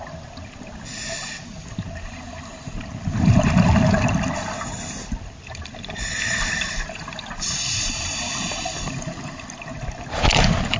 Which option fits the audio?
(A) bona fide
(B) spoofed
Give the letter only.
A